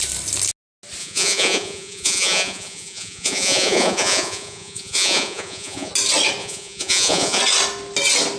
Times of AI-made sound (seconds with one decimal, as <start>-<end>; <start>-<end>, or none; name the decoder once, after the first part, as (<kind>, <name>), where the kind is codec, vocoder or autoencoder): 1.0-5.9 (vocoder, Vocos); 6.4-7.4